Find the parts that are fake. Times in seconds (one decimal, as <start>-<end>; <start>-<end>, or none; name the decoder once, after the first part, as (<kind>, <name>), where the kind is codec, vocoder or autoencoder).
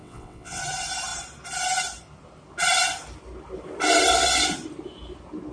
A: 0.0-0.6 (vocoder, WaveNeXt)